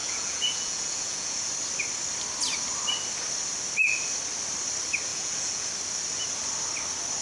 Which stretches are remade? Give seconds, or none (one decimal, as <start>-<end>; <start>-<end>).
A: 0.0-1.5; 5.1-5.7